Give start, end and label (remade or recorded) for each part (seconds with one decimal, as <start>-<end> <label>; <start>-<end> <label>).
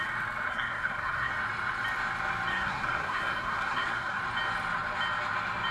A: 0.0-0.5 recorded; 0.5-1.3 remade; 1.3-2.5 recorded; 2.5-4.2 remade; 4.2-5.7 recorded